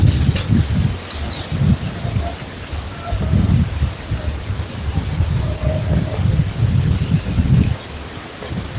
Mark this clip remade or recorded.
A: recorded